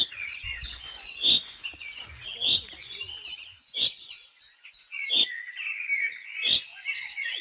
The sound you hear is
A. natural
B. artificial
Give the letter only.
B